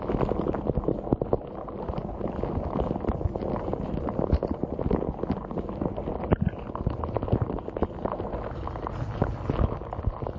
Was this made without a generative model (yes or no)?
yes